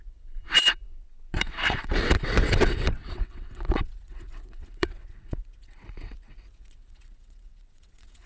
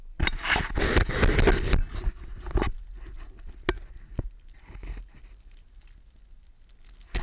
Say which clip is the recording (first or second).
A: second